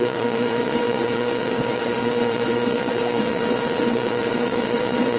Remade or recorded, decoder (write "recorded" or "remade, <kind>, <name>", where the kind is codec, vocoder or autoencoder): remade, vocoder, WaveNeXt